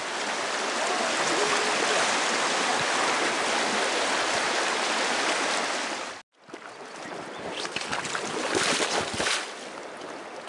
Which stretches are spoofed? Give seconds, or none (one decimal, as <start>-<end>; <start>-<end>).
none